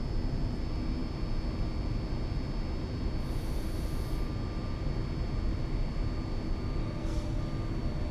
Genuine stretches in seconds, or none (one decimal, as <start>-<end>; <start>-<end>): 0.0-6.8; 7.4-8.1